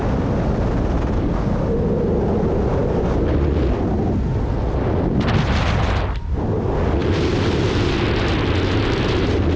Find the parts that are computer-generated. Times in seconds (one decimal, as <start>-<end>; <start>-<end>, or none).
none